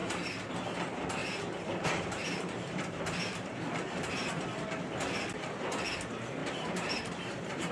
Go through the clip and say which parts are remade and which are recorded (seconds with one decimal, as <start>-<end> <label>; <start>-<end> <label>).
0.0-1.2 recorded; 1.2-4.3 remade; 4.3-6.4 recorded; 6.4-7.7 remade